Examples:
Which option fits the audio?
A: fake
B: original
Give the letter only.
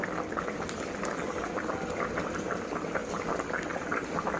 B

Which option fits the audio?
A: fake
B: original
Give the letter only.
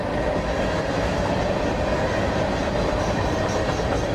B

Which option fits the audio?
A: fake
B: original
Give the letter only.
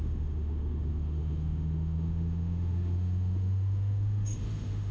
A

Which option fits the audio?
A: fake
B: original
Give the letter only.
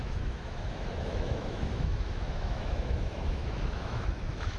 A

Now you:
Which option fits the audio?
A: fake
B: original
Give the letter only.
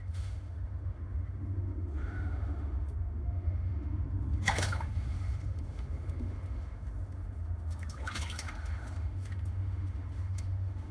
A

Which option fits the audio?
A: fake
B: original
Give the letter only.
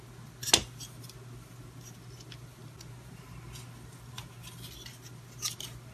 B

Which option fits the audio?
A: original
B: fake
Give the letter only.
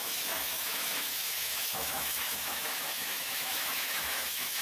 B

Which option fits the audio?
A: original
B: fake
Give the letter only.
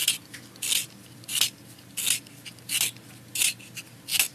A